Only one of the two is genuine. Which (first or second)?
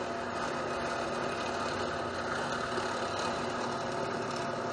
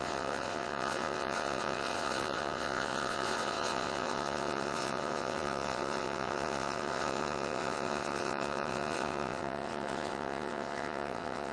first